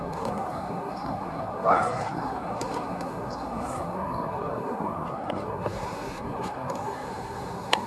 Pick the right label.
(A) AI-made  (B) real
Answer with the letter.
A